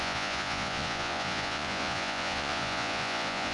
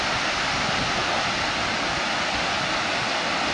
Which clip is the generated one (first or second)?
first